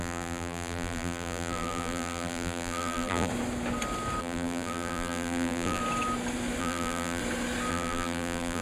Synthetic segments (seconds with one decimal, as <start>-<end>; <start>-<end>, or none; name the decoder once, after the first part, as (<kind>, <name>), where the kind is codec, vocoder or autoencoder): 0.0-3.3 (vocoder, BigVGAN v2); 4.2-5.8; 6.6-7.2; 7.7-8.6

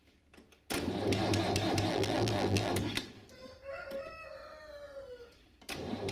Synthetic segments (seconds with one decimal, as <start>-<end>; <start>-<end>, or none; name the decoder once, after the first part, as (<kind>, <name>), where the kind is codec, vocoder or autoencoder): 1.9-2.7 (vocoder, BigVGAN v2)

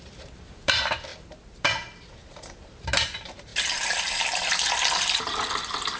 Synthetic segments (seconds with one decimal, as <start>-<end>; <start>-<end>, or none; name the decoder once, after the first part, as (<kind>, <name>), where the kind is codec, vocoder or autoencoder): 0.0-6.0 (vocoder, BigVGAN v2)

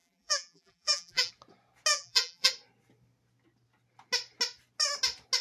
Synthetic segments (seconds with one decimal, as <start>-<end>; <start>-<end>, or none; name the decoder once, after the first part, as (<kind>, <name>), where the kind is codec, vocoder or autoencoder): 0.0-1.3 (vocoder, BigVGAN v2); 1.9-2.5

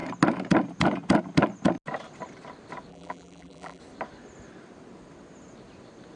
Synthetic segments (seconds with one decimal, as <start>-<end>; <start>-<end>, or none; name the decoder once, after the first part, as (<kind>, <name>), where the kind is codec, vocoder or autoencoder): 2.9-3.8 (vocoder, BigVGAN v2)